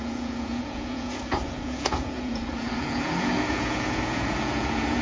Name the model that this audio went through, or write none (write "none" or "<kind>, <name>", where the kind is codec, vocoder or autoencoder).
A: vocoder, Vocos